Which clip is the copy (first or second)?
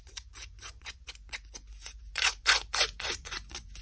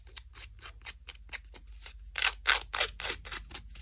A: first